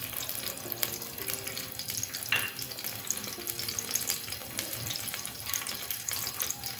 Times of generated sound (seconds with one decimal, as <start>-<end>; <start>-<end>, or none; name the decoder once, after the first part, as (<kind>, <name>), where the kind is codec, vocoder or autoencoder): 4.4-6.2 (vocoder, BigVGAN v2)